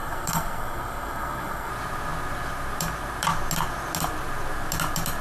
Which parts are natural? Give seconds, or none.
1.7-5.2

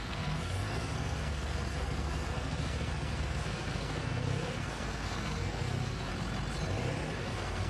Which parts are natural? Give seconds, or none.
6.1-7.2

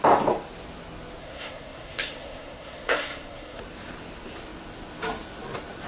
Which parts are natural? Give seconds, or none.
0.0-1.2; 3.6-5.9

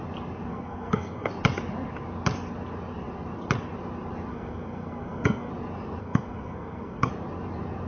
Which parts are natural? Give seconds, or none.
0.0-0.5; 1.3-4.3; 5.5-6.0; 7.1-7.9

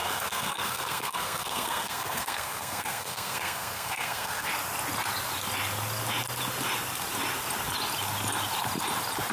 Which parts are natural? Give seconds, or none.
4.5-9.3

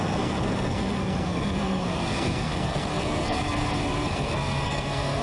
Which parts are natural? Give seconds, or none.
none

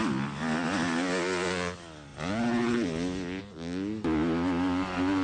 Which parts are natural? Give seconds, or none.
0.0-5.2

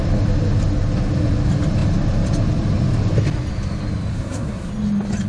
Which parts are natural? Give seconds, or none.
0.0-4.1; 4.7-5.3